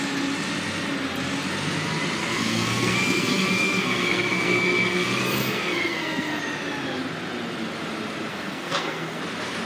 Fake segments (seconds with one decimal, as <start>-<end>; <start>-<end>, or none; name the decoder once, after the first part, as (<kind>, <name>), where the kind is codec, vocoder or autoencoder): 2.2-6.4 (codec, SNAC); 8.3-9.2